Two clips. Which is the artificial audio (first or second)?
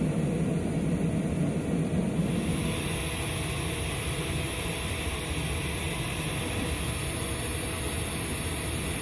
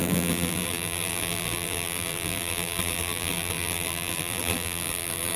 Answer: second